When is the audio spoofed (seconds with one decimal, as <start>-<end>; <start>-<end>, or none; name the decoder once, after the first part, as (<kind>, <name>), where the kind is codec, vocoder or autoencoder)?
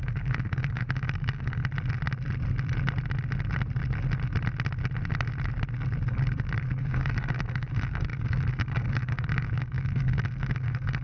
0.0-1.6 (codec, DAC); 6.1-11.0